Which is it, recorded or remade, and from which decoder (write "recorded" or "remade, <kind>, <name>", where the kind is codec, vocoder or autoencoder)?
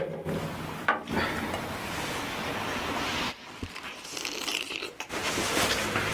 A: recorded